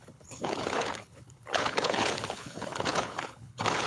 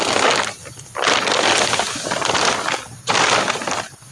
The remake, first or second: first